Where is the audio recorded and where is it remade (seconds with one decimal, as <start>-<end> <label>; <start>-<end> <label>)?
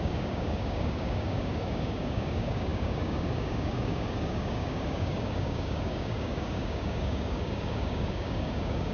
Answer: 0.0-8.9 remade